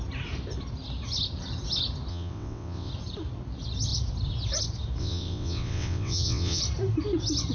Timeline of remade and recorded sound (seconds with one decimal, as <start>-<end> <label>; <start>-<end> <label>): 0.0-2.1 recorded; 2.1-2.9 remade; 2.9-5.0 recorded; 5.0-6.6 remade; 6.6-7.5 recorded